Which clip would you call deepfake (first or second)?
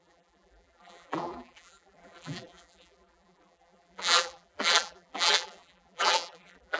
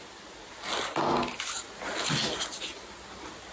first